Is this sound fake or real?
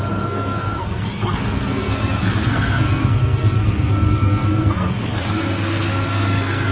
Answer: fake